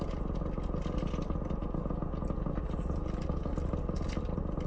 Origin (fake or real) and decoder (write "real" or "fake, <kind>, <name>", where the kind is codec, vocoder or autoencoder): real